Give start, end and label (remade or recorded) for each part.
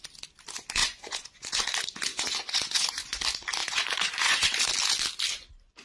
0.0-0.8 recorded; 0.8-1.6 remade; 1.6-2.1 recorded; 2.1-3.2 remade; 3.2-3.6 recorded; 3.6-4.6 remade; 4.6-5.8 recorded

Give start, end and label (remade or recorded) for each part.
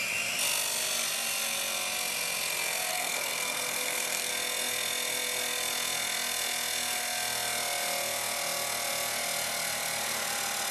0.0-2.9 recorded; 2.9-4.3 remade; 4.3-10.7 recorded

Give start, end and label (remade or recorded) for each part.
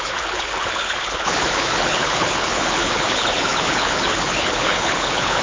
0.0-5.4 remade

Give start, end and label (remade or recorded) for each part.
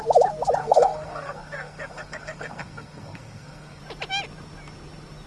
0.0-0.6 recorded; 0.6-3.8 remade; 3.8-5.3 recorded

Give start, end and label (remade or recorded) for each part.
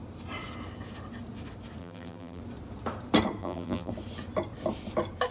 0.0-1.8 recorded; 1.8-2.4 remade; 2.4-3.4 recorded; 3.4-3.9 remade; 3.9-5.3 recorded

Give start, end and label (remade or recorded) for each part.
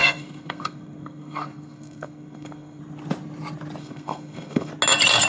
0.0-2.8 remade; 2.8-3.8 recorded; 3.8-4.7 remade; 4.7-5.3 recorded